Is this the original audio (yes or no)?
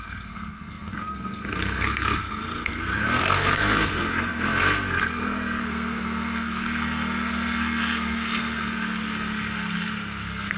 no